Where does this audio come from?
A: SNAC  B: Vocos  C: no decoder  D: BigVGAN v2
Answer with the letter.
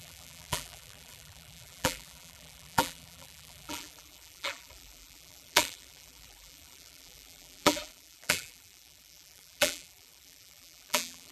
D